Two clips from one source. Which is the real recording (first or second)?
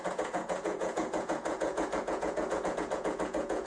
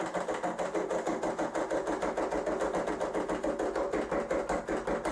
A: second